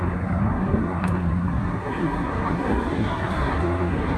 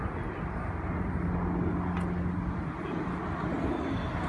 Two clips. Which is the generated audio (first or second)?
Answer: first